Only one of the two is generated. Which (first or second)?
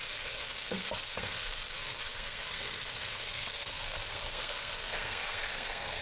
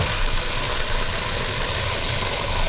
first